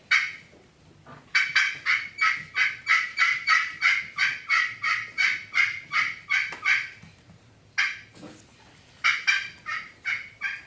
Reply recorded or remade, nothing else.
recorded